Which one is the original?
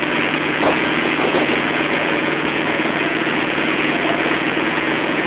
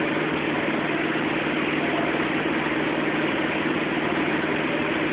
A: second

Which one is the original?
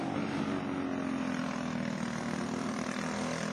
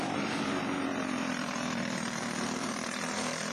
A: first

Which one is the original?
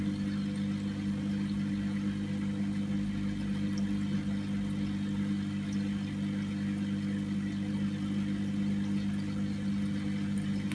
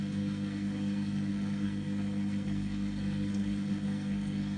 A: first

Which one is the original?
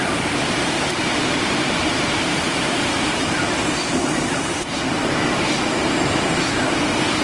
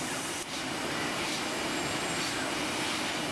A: second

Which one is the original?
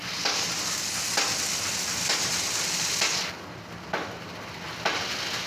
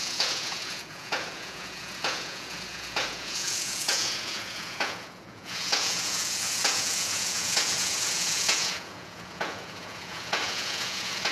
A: first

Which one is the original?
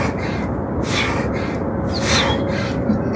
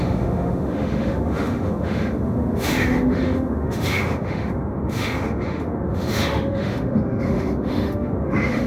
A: first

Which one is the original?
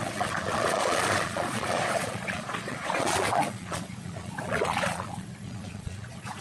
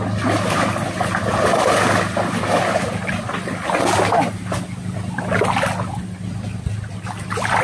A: second